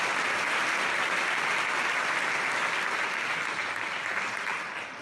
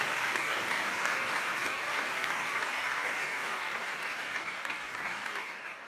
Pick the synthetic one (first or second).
second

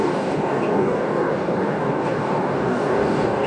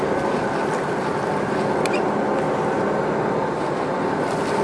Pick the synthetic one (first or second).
first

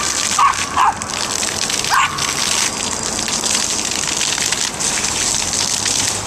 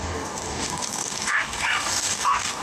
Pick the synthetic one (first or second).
second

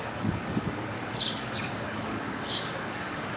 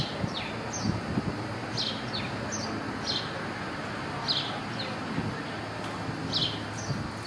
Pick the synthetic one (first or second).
first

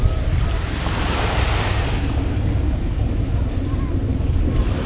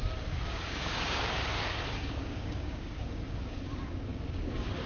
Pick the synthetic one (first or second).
second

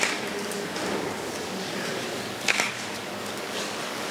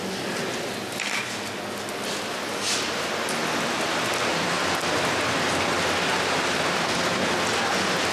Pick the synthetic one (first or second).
first